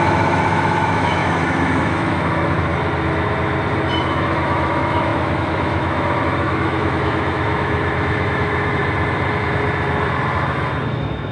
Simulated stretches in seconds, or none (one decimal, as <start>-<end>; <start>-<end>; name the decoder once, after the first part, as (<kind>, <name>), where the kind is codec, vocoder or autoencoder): 0.0-2.7 (autoencoder, DAC-VAE); 4.0-8.8; 10.9-11.3